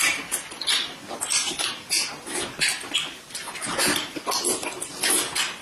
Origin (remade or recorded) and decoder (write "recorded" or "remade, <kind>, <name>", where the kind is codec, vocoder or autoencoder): recorded